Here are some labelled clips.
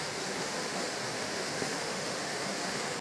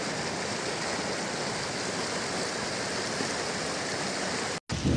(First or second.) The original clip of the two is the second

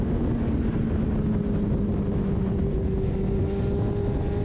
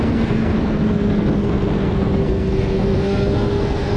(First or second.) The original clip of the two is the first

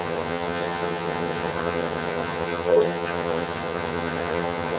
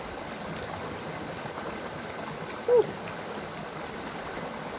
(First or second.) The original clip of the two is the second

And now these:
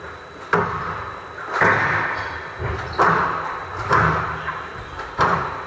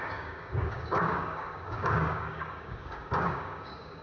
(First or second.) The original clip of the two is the first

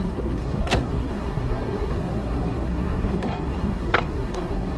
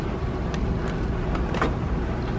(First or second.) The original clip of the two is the second